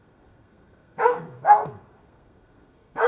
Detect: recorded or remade remade